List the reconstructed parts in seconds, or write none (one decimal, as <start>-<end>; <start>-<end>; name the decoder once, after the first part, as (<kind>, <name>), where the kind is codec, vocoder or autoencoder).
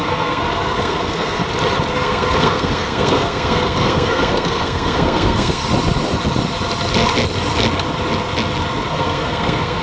0.0-1.4 (codec, SNAC); 1.9-5.6; 8.9-9.8